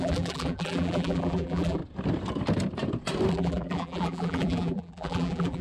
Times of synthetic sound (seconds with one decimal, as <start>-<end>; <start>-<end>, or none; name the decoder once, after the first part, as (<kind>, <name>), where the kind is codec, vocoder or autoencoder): 0.0-1.8 (vocoder, BigVGAN v2); 3.3-5.6